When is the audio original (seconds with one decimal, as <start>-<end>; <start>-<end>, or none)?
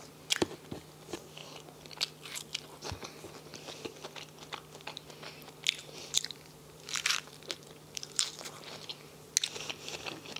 0.0-5.8; 9.1-10.4